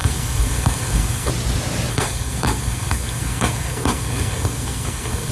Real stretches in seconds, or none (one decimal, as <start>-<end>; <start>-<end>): 1.3-1.9